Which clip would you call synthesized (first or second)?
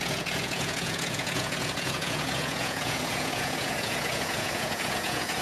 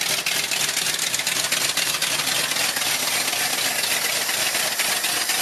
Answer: first